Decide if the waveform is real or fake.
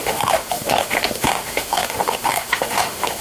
fake